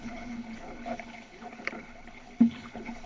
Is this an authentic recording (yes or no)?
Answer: no